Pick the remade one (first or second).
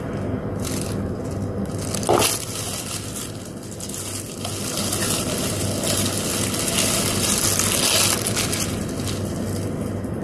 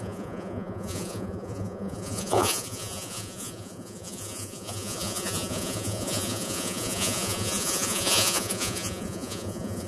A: second